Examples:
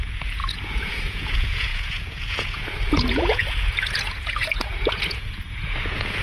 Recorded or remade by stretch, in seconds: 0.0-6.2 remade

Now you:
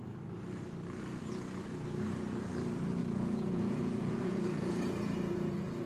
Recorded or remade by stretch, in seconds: 0.0-3.0 recorded; 3.0-5.9 remade

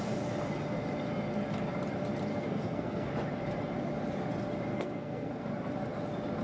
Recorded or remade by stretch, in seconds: 0.0-2.3 recorded; 2.3-3.1 remade; 3.1-4.7 recorded; 4.7-5.5 remade; 5.5-6.4 recorded

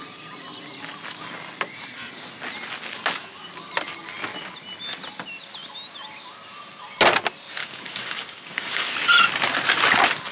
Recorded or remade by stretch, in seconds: 0.0-7.6 recorded; 7.6-8.9 remade; 8.9-10.3 recorded

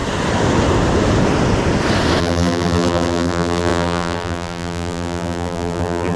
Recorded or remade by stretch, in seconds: 0.0-2.2 recorded; 2.2-6.2 remade

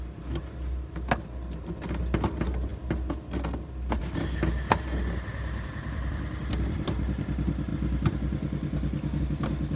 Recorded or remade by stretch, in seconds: 0.0-5.3 recorded; 5.3-7.1 remade; 7.1-9.8 recorded

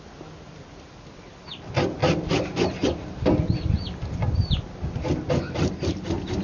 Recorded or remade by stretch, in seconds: 0.0-6.4 recorded